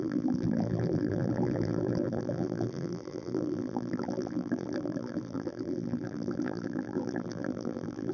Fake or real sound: fake